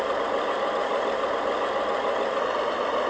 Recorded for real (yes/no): yes